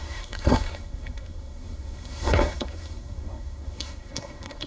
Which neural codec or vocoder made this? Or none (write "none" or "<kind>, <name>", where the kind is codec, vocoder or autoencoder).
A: codec, SNAC